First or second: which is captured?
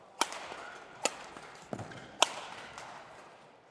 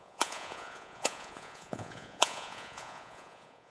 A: first